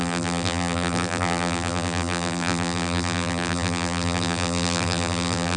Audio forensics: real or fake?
fake